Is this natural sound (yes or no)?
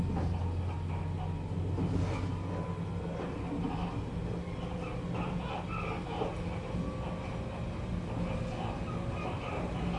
yes